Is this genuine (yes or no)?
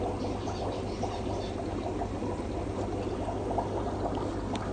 yes